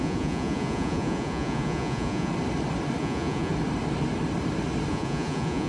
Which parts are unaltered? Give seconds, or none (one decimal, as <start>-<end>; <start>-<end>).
2.3-3.0; 3.5-4.9